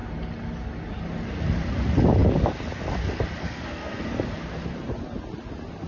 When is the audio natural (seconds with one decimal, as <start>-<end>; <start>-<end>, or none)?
0.0-3.4; 4.0-5.9